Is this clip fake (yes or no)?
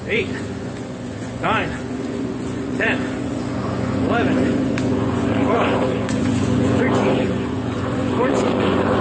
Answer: yes